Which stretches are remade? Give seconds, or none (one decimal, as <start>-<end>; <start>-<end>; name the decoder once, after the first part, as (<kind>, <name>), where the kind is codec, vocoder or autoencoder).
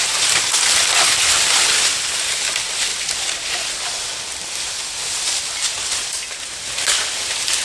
0.0-2.9 (vocoder, BigVGAN v2); 4.2-7.6